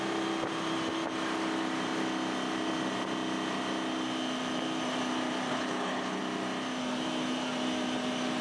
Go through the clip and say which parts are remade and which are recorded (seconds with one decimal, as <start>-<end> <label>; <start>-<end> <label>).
0.0-5.5 recorded; 5.5-6.2 remade; 6.2-8.4 recorded